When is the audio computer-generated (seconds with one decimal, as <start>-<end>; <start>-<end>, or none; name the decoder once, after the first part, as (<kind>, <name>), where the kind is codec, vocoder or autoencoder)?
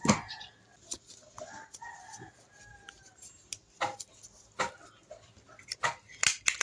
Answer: none